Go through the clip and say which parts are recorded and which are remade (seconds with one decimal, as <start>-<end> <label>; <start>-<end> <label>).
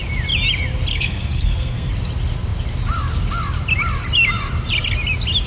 0.0-0.9 recorded; 0.9-1.9 remade; 1.9-5.5 recorded